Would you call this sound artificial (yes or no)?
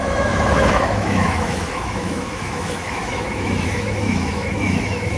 yes